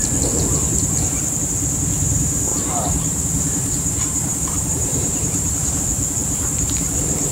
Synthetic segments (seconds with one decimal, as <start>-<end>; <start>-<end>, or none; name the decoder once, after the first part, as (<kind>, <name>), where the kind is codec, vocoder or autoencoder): 2.5-5.8 (vocoder, BigVGAN v2); 6.2-7.3